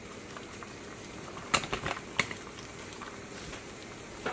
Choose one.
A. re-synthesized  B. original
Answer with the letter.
B